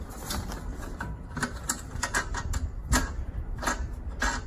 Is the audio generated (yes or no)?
yes